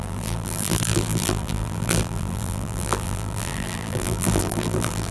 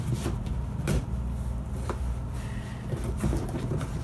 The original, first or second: second